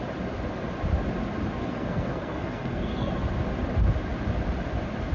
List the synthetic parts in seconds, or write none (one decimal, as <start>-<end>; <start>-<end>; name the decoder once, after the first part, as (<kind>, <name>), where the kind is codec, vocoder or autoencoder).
1.6-3.1 (codec, SNAC)